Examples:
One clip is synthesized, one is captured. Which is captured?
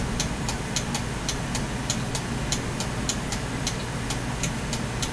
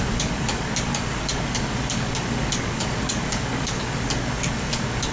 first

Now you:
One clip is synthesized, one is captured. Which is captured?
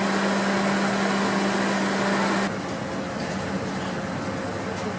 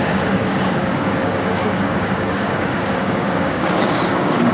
first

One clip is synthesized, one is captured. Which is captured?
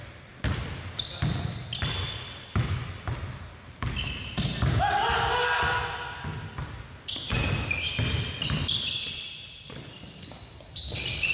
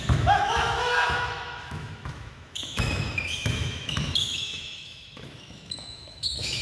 first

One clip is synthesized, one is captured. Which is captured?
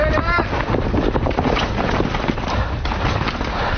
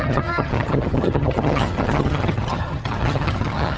first